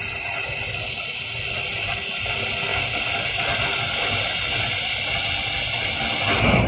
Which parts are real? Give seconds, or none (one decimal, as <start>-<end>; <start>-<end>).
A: 0.0-6.7